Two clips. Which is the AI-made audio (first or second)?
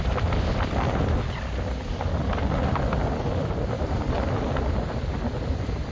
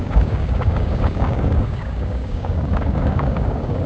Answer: second